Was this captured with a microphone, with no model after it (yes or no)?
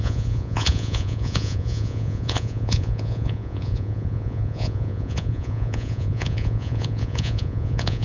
no